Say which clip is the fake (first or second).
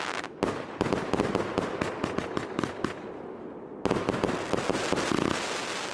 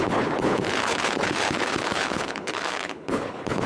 second